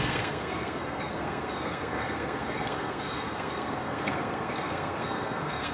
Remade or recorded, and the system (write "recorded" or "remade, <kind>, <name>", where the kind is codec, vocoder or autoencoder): remade, codec, SNAC